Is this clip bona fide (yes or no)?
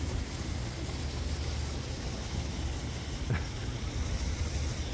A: yes